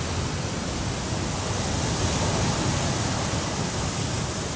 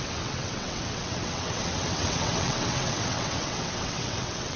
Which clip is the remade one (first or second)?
second